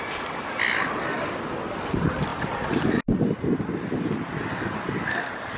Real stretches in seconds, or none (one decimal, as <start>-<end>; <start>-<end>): 0.0-5.6